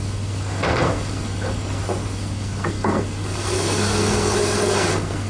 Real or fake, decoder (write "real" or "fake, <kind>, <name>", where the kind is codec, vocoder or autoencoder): fake, codec, SNAC